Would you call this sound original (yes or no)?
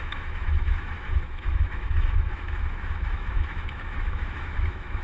no